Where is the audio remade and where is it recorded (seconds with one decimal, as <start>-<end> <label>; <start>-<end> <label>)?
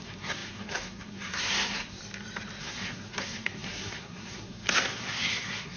0.0-2.0 remade; 2.0-2.6 recorded; 2.6-5.8 remade